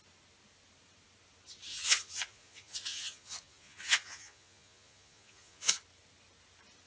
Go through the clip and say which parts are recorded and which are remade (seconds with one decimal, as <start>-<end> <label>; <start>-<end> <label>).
0.0-1.7 recorded; 1.7-5.8 remade; 5.8-6.9 recorded

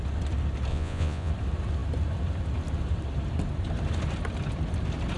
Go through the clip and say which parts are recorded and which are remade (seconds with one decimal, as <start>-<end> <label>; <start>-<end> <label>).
0.0-0.7 recorded; 0.7-1.3 remade; 1.3-5.2 recorded

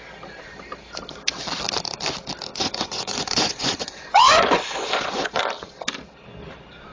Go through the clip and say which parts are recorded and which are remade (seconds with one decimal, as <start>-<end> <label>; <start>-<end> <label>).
0.0-2.5 recorded; 2.5-5.4 remade; 5.4-6.9 recorded

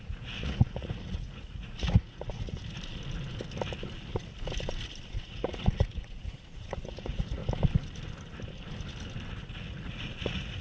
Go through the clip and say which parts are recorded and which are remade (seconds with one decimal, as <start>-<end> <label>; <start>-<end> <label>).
0.0-2.6 remade; 2.6-5.1 recorded; 5.1-7.4 remade; 7.4-9.3 recorded; 9.3-10.6 remade

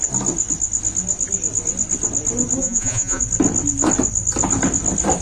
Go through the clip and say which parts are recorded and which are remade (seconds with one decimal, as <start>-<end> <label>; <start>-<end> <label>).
0.0-2.6 recorded; 2.6-3.2 remade; 3.2-5.2 recorded

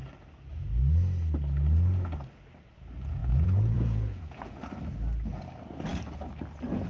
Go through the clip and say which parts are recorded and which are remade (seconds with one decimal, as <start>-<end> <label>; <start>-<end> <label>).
0.0-3.2 recorded; 3.2-4.6 remade; 4.6-6.9 recorded